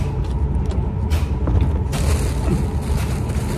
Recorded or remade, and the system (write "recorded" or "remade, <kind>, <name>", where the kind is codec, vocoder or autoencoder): recorded